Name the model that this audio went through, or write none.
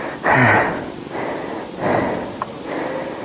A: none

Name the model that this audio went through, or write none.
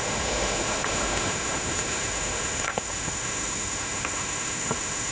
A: autoencoder, DAC-VAE